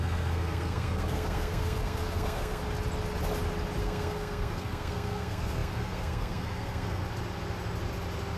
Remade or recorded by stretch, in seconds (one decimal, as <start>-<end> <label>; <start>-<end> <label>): 0.0-2.6 remade; 2.6-3.8 recorded; 3.8-7.0 remade; 7.0-8.4 recorded